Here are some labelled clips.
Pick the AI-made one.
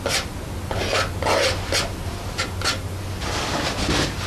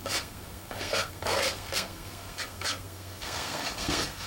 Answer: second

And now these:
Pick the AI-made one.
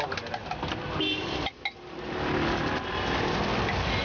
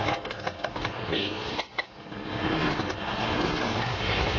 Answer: second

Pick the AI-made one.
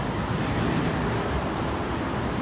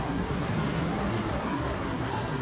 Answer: second